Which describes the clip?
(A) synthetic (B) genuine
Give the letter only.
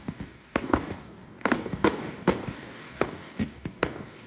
A